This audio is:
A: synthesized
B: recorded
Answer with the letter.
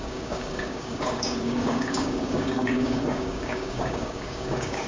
A